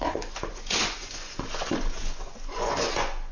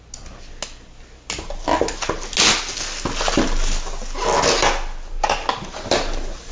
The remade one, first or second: first